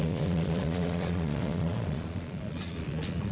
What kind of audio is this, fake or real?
fake